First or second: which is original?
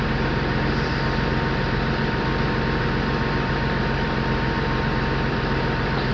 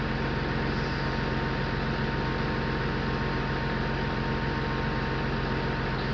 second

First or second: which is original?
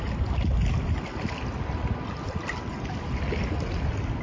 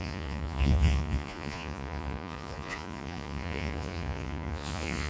first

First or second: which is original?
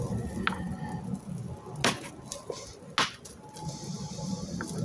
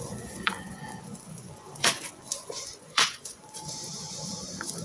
first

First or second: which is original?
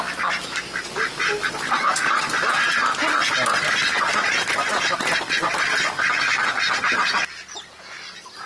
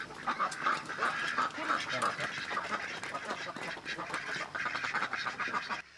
first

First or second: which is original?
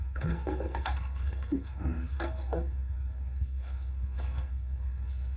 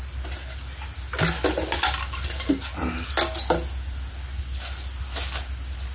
second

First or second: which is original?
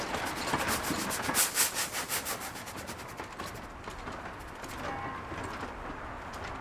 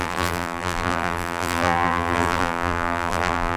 first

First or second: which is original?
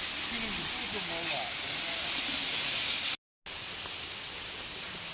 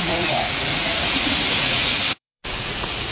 first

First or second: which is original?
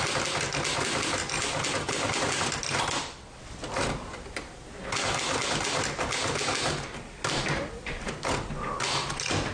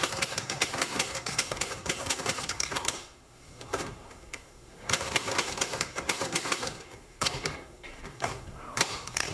first